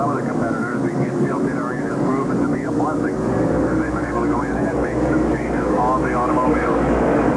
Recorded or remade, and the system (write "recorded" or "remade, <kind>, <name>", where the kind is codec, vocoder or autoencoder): remade, codec, DAC